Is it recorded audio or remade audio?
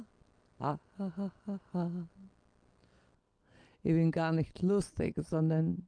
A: recorded